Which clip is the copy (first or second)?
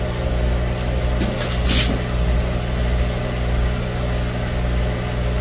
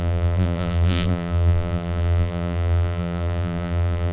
second